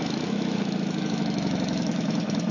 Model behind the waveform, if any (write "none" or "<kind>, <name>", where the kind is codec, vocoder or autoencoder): autoencoder, DAC-VAE